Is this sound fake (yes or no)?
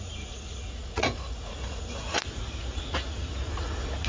yes